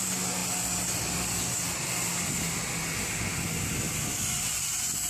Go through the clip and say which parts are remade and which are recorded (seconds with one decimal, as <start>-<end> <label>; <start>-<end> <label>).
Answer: 0.0-5.1 recorded